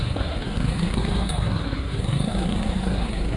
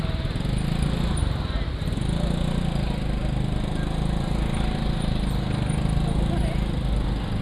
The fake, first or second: first